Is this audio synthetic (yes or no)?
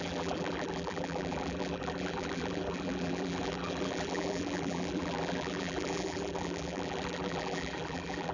yes